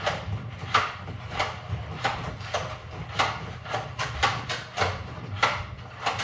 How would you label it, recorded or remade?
recorded